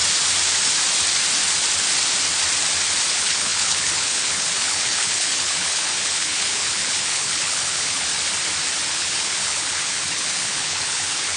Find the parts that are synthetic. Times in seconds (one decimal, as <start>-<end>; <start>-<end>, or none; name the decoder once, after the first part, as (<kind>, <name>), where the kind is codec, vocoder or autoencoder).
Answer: 3.1-8.1 (codec, HILCodec); 8.9-11.4